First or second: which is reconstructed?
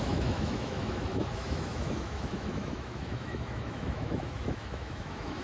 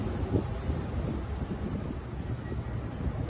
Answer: first